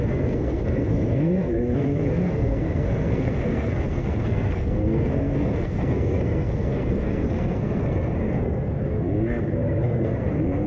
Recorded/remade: remade